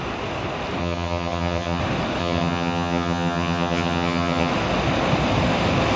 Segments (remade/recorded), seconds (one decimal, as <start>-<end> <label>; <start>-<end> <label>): 0.0-0.8 recorded; 0.8-1.8 remade; 1.8-2.2 recorded; 2.2-4.5 remade; 4.5-6.0 recorded